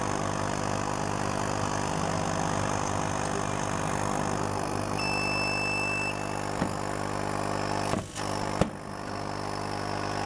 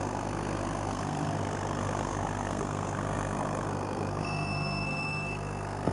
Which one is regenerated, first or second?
second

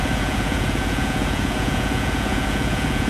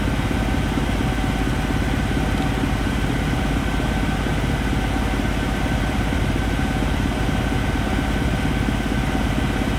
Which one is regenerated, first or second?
first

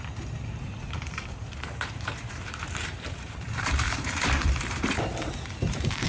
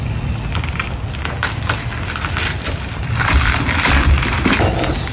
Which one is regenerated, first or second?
first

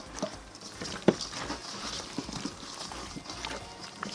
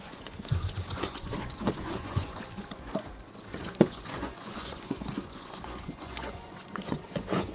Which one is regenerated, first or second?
second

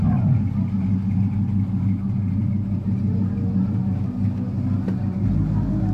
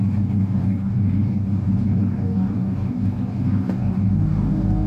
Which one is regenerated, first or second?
second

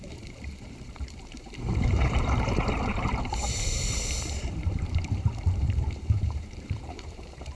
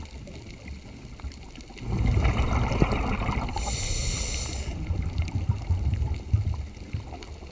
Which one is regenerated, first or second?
first